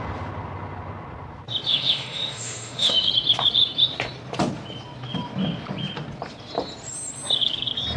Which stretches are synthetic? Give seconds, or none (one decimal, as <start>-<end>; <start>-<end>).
1.7-3.1